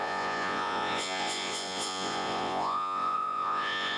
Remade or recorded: remade